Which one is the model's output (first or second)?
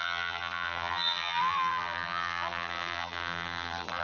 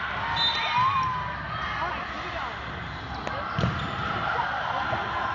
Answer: first